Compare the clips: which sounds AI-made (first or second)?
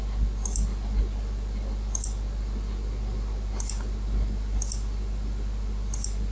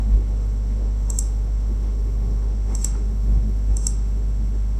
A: second